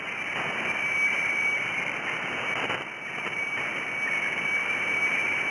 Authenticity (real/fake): real